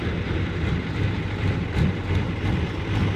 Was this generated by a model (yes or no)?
no